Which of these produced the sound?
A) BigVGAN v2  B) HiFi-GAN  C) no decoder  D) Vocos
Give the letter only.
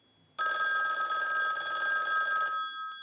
C